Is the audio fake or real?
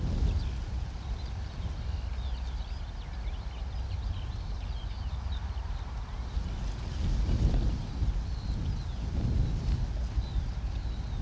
real